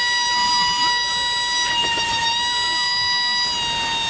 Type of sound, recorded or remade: recorded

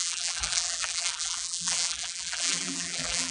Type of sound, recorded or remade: remade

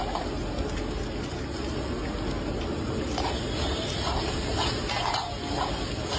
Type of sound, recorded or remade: recorded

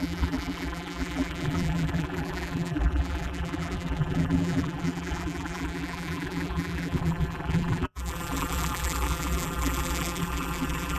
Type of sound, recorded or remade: remade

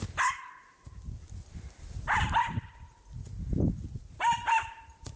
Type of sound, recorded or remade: recorded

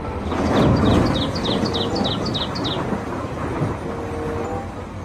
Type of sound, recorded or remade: recorded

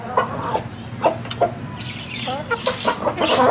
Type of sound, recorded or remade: recorded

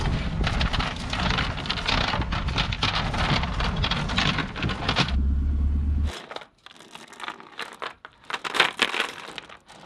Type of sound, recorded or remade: recorded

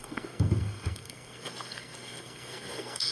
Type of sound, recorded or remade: remade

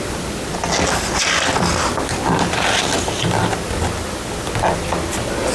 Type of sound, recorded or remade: recorded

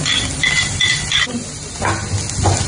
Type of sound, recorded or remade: recorded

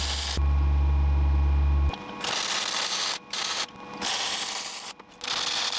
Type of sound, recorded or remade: recorded